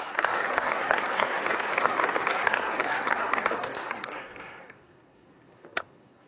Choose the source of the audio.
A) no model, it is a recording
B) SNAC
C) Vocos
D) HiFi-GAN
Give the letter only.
B